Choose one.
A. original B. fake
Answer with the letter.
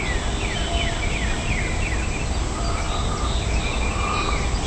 A